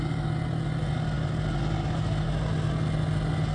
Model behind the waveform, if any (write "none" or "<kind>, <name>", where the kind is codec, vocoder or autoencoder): none